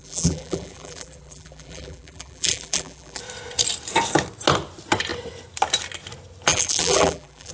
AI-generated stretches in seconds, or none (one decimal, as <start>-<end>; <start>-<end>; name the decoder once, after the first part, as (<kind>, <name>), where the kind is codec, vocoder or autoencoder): 0.0-3.2 (vocoder, BigVGAN v2); 6.5-7.5